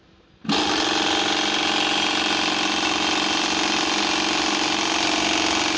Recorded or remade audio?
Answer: recorded